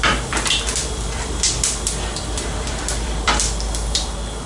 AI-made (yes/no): yes